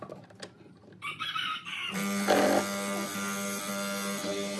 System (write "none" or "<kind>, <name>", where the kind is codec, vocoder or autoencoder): none